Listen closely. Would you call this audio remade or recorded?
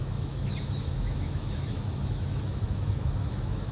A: remade